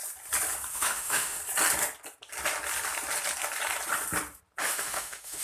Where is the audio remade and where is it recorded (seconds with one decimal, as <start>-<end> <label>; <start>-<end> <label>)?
0.0-0.7 recorded; 0.7-1.4 remade; 1.4-4.6 recorded; 4.6-5.4 remade